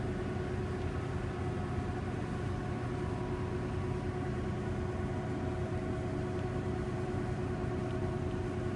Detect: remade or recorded recorded